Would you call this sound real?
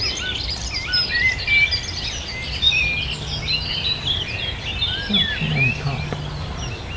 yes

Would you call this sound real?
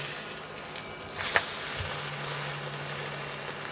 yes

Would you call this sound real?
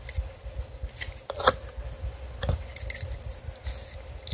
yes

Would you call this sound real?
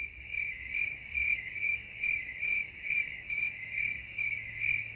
no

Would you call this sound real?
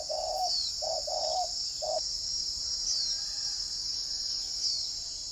yes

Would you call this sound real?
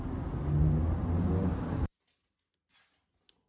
yes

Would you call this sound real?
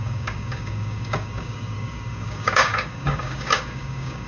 no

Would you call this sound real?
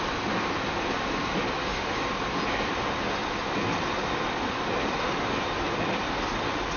yes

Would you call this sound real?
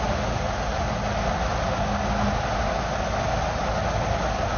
yes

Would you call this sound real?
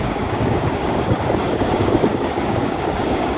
no